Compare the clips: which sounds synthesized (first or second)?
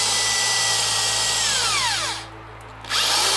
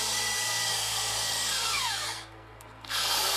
second